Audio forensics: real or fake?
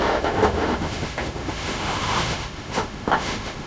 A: fake